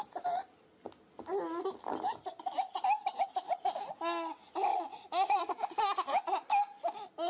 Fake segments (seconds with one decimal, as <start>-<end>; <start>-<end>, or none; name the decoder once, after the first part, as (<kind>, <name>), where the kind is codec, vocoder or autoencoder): 4.7-5.4 (vocoder, Vocos)